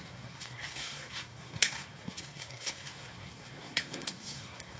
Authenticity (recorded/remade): remade